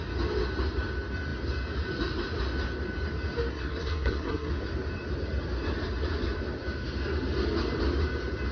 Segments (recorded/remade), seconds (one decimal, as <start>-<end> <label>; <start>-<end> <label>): 0.0-3.5 recorded; 3.5-4.5 remade; 4.5-8.5 recorded